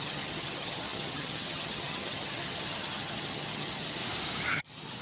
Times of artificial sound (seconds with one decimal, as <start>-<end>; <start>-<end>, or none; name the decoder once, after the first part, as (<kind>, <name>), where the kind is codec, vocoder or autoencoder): 0.0-4.0 (vocoder, HiFi-GAN); 4.5-5.0